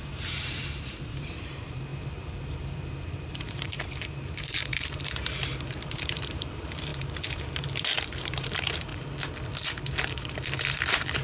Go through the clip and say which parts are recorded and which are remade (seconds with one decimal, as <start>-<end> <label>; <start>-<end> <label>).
0.0-8.9 remade; 8.9-10.1 recorded; 10.1-11.2 remade